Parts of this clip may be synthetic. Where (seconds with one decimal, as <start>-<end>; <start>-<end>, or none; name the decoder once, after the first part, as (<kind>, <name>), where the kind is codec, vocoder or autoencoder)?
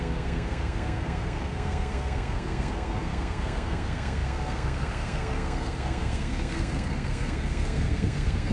0.0-8.5 (codec, SNAC)